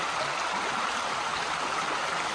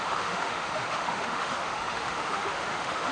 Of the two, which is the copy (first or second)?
second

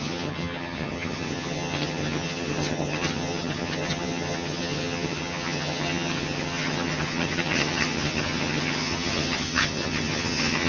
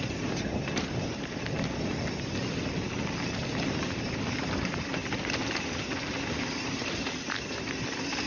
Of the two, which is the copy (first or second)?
first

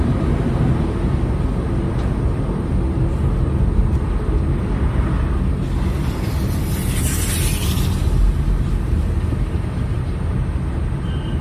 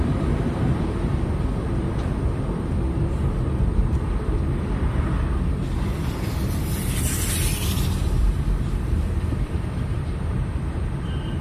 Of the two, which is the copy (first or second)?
second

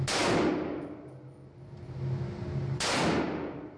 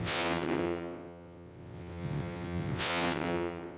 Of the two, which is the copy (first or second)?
second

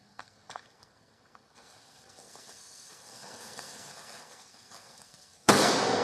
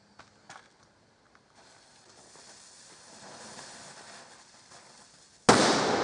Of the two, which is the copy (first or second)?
first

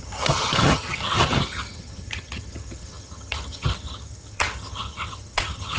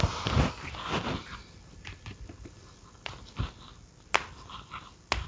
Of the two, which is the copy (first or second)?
first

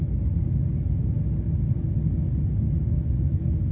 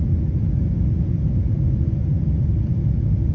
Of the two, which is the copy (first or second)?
second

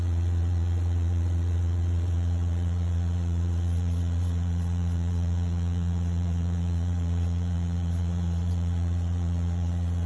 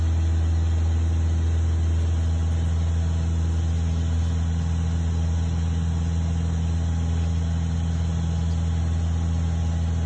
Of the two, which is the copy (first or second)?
first